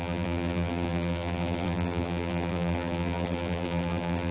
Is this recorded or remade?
remade